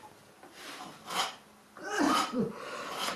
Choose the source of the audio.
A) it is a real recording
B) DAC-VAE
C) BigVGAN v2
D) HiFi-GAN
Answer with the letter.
C